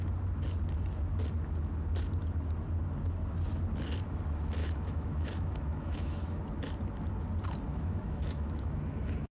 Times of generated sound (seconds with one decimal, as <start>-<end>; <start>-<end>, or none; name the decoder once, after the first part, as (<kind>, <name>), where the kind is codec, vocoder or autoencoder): 4.6-6.4 (autoencoder, DAC-VAE); 7.7-9.3